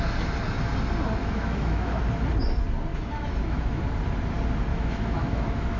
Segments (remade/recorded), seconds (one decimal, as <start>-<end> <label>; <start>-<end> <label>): 0.0-1.2 recorded; 1.2-2.0 remade; 2.0-2.9 recorded; 2.9-3.8 remade; 3.8-4.7 recorded; 4.7-5.8 remade